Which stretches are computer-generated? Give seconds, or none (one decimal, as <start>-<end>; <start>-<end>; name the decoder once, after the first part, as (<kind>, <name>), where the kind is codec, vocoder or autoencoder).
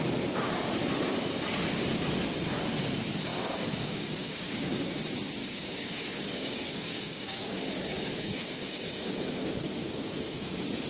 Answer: 3.3-5.0 (codec, DAC); 5.4-9.1; 9.8-10.5